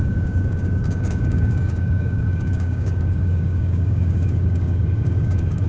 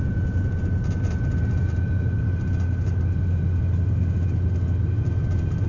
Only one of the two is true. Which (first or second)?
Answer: second